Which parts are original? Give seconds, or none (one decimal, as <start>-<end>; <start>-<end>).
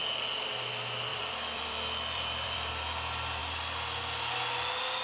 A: 0.0-1.1; 2.7-5.0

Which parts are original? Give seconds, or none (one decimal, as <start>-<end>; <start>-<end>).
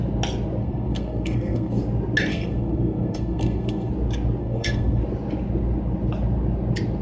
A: 0.0-0.6; 1.8-2.3; 3.9-4.4; 5.0-7.0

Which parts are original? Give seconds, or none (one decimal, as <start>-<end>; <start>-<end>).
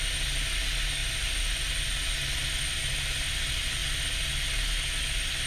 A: 0.0-5.5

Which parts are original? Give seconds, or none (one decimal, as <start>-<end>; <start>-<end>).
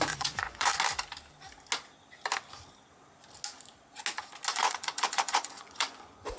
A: 0.7-4.5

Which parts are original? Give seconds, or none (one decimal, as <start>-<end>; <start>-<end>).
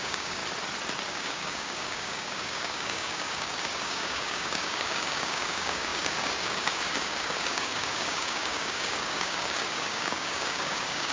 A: 0.4-1.1